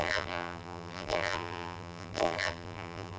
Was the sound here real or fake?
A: fake